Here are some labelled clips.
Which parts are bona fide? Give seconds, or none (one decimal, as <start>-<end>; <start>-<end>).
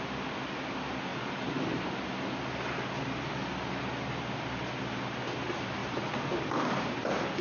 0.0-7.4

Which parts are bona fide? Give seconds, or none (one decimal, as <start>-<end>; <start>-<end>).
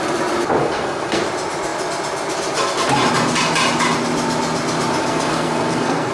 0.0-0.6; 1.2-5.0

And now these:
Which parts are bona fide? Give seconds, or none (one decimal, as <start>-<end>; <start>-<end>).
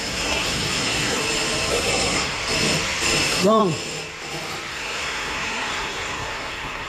1.2-1.7; 2.4-3.2; 3.6-4.7